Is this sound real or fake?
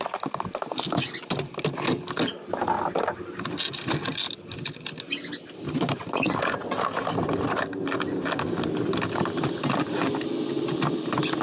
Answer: real